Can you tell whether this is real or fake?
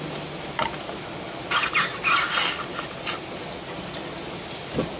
real